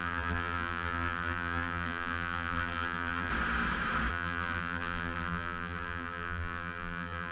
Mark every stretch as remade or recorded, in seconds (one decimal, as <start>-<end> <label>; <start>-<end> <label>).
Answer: 0.0-3.3 remade; 3.3-4.1 recorded; 4.1-7.3 remade